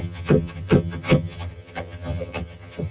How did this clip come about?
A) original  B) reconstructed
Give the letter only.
B